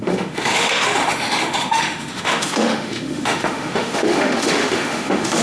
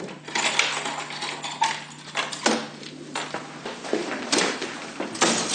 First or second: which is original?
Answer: second